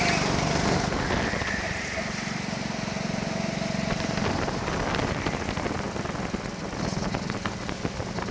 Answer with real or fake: real